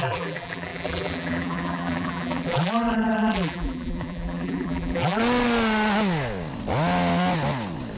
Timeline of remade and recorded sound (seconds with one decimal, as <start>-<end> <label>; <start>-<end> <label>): 0.0-5.2 remade; 5.2-8.0 recorded